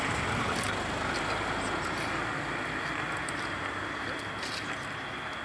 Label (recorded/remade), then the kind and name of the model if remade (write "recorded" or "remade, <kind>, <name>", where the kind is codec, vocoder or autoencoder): recorded